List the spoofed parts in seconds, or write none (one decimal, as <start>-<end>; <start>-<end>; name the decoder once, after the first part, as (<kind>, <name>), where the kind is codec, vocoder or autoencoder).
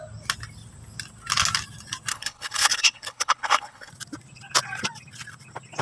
2.1-3.9 (codec, HILCodec)